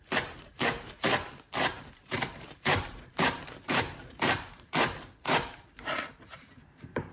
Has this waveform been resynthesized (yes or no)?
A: yes